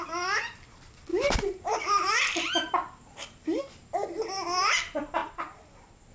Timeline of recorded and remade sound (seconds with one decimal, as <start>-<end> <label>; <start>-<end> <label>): 0.0-1.1 recorded; 1.1-3.6 remade; 3.6-5.2 recorded; 5.2-6.1 remade